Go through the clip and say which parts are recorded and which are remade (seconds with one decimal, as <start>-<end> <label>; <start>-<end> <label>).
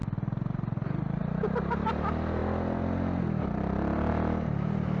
0.0-5.0 recorded